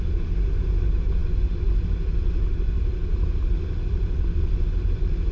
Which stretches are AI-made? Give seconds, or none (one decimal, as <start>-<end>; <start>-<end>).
none